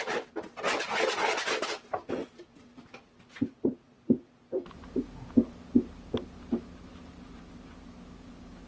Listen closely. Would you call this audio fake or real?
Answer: real